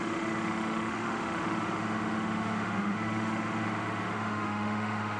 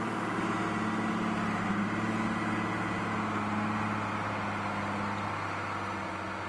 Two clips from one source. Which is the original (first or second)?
second